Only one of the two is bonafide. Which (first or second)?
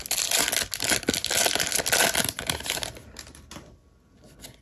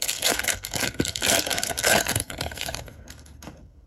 first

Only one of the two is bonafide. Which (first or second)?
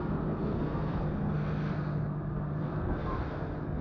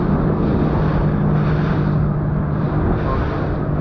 second